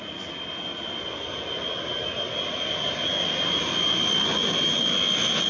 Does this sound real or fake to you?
real